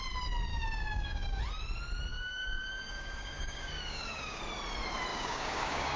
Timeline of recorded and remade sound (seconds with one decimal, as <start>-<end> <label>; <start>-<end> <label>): 0.0-0.5 recorded; 0.5-1.4 remade; 1.4-2.1 recorded; 2.1-4.4 remade; 4.4-5.1 recorded; 5.1-6.0 remade